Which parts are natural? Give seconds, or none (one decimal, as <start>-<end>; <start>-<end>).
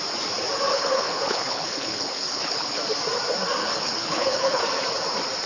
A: 0.0-0.7; 2.8-3.6; 4.6-5.5